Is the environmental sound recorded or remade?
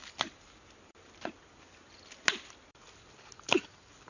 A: recorded